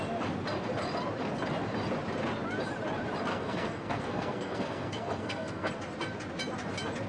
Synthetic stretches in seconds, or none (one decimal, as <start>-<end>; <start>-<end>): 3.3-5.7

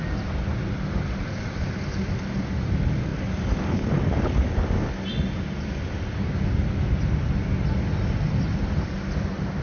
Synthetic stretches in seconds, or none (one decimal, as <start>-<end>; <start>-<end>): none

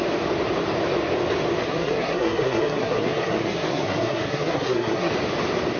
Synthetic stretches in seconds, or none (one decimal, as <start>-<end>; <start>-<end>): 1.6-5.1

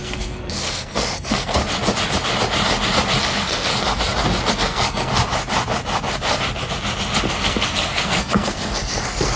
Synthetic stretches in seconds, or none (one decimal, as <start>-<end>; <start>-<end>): 0.0-1.6; 3.2-3.7; 4.5-5.1; 7.3-9.4

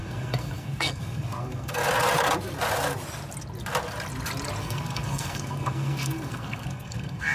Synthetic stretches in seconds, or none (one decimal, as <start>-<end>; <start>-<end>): 0.0-1.8; 4.6-7.3